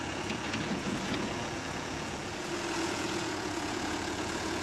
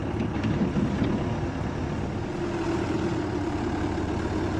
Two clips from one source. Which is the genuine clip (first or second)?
second